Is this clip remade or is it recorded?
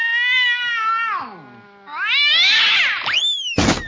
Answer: recorded